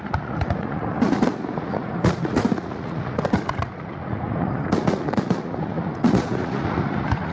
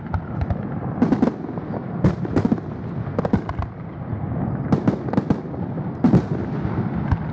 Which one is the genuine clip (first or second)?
second